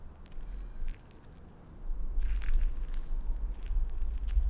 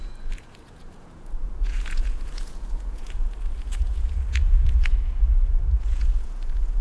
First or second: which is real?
first